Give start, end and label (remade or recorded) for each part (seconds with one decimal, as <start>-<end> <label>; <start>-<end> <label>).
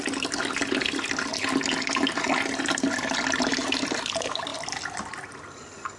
0.0-6.0 recorded